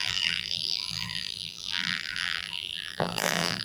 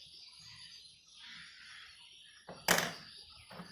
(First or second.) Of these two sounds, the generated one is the first